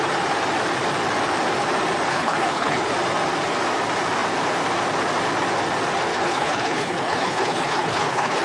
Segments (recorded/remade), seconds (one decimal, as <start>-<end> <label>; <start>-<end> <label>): 0.0-2.1 recorded; 2.1-2.9 remade; 2.9-6.1 recorded; 6.1-8.4 remade